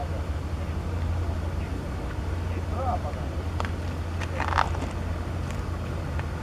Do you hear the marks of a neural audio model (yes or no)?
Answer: no